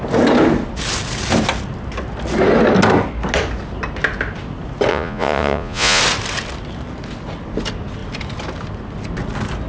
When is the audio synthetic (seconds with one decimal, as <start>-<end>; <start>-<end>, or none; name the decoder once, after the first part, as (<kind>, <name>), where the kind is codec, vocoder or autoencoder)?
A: 4.9-6.0 (vocoder, Vocos)